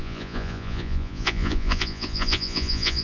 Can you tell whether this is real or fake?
fake